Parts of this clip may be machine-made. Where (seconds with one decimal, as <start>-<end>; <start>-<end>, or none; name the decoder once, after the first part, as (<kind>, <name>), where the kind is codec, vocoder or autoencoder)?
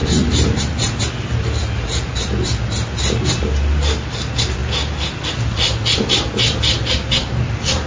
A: none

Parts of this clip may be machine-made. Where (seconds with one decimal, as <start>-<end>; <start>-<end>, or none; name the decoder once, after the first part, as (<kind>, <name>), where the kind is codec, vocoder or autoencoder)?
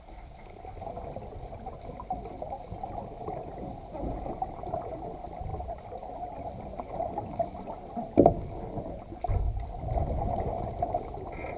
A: none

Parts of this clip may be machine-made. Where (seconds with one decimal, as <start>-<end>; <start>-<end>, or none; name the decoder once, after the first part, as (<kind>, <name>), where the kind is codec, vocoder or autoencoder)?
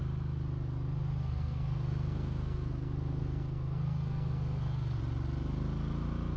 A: 1.2-5.0 (codec, SNAC)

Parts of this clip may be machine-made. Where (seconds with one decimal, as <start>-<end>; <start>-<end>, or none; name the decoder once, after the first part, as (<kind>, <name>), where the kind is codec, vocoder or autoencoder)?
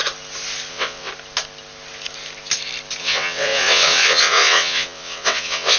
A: 0.7-1.1 (vocoder, WaveNeXt); 3.0-5.8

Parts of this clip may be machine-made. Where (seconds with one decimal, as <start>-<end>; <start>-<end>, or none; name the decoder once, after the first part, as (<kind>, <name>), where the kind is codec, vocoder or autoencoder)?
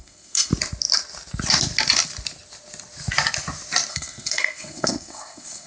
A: 0.0-0.5 (codec, SNAC); 3.9-5.7